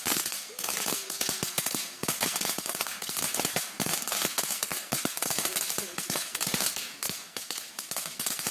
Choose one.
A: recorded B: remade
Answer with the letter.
B